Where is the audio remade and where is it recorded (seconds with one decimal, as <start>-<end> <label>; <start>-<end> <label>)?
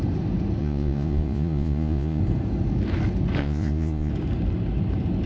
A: 0.0-0.6 recorded; 0.6-2.2 remade; 2.2-3.4 recorded; 3.4-4.1 remade; 4.1-5.3 recorded